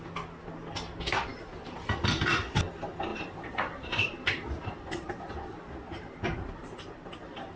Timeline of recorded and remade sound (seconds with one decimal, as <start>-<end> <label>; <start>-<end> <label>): 0.0-3.1 recorded; 3.1-7.6 remade

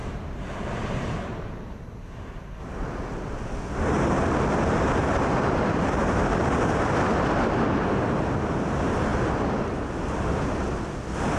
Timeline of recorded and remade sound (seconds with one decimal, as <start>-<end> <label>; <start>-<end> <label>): 0.0-2.6 remade; 2.6-5.0 recorded; 5.0-6.4 remade; 6.4-11.4 recorded

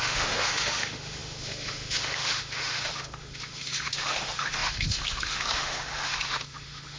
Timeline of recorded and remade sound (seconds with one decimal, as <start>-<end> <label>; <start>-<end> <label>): 0.0-7.0 remade

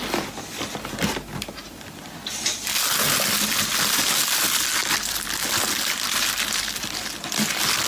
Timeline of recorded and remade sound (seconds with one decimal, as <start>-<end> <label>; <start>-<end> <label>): 0.0-7.9 recorded

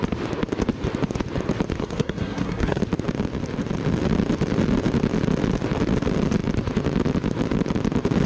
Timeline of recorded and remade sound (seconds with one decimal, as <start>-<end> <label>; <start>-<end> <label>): 0.0-1.8 recorded; 1.8-2.8 remade; 2.8-8.3 recorded

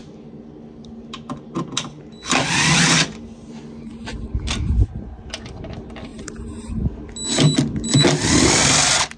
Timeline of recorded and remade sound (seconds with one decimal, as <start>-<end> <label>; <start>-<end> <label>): 0.0-6.1 recorded; 6.1-7.0 remade; 7.0-9.2 recorded